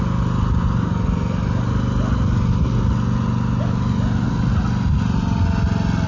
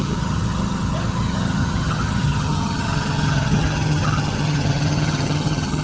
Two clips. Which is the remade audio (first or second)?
second